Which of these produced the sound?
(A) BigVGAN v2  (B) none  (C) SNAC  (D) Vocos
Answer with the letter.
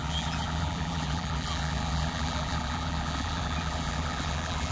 A